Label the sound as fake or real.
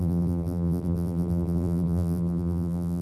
fake